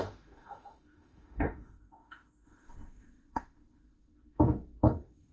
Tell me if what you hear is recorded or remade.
remade